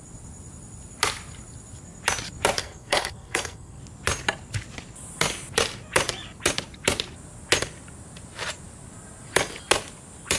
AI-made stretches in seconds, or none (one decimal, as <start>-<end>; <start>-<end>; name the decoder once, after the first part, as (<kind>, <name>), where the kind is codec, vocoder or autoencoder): 2.6-3.8 (codec, SNAC)